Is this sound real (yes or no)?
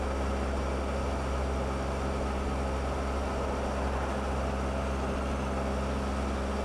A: yes